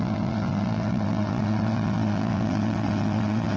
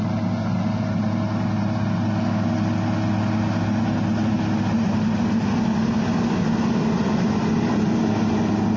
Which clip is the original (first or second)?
second